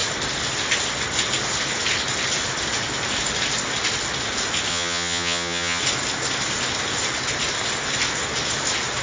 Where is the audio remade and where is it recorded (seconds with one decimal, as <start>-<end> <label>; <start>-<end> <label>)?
0.0-4.7 recorded; 4.7-5.8 remade; 5.8-9.0 recorded